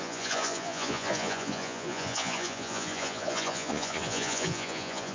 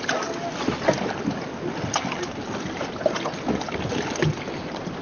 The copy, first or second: first